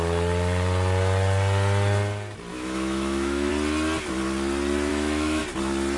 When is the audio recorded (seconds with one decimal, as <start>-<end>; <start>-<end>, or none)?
0.0-2.5; 3.5-4.9; 5.4-6.0